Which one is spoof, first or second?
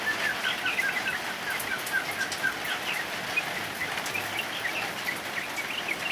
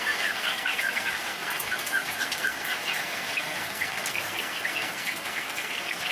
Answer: second